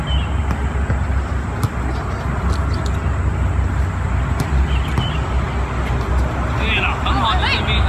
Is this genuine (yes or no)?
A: yes